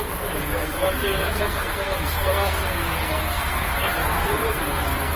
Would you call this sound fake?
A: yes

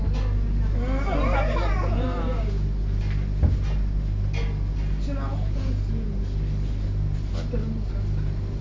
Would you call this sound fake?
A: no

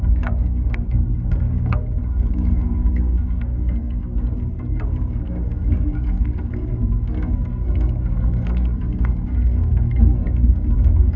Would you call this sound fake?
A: yes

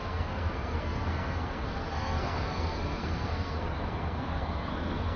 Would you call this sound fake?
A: yes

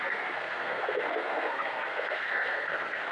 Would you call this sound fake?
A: yes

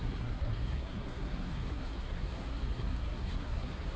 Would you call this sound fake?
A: yes